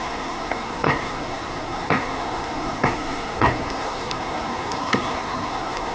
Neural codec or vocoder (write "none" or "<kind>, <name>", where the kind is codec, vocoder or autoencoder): codec, SNAC